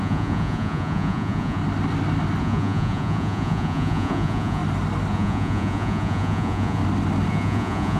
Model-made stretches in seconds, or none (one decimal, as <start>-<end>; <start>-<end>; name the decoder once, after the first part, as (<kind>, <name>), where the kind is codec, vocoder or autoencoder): 0.0-1.6 (vocoder, Vocos); 2.4-4.6; 5.1-6.8; 7.3-8.0